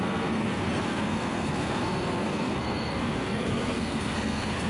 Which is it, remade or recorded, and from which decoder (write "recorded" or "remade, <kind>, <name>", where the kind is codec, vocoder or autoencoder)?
remade, codec, SNAC